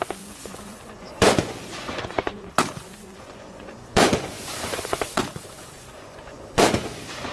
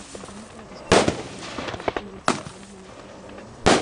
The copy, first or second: first